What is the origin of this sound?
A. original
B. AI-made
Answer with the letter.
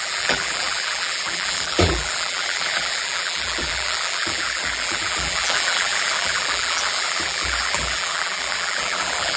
B